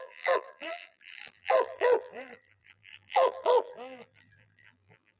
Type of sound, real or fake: fake